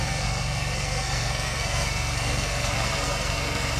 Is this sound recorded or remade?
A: remade